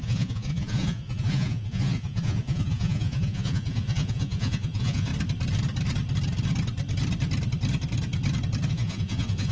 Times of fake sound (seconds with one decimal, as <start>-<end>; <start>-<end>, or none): 0.0-5.1; 8.7-9.5